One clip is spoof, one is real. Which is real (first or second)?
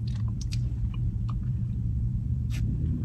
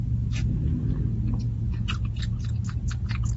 second